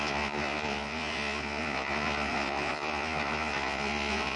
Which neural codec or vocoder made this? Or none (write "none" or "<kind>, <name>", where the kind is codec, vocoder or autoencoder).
vocoder, Vocos